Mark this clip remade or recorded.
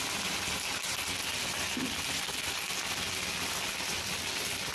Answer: recorded